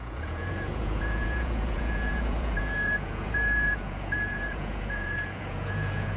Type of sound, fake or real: fake